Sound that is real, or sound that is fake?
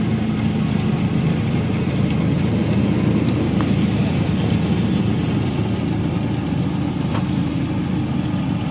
real